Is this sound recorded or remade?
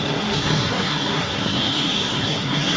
remade